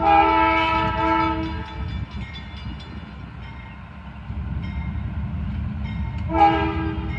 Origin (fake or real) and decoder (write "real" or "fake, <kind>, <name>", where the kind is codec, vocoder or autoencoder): real